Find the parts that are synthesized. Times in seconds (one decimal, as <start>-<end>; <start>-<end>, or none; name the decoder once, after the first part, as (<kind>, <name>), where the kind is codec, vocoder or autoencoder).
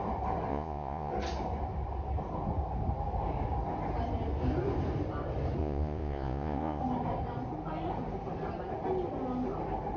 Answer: 0.5-1.1 (vocoder, Vocos); 5.6-6.8